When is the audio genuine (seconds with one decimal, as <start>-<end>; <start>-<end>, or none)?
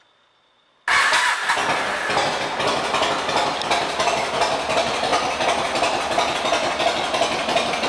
0.0-7.9